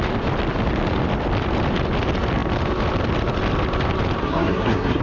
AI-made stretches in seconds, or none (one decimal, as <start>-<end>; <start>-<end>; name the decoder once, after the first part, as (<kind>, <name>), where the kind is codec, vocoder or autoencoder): 4.2-5.0 (codec, SNAC)